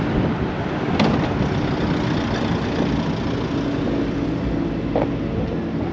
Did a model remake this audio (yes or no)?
no